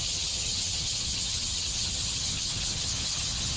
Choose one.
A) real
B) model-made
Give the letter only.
B